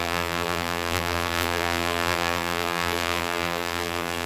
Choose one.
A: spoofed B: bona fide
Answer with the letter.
A